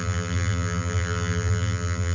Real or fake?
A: fake